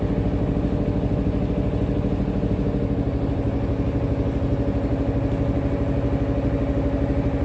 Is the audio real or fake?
real